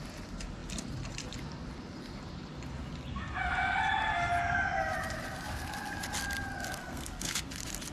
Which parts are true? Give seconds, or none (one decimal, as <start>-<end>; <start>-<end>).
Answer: 0.0-6.8; 7.5-7.9